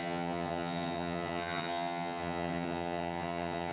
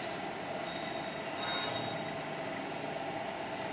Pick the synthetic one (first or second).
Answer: first